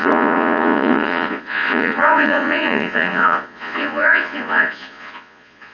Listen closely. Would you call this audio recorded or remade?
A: remade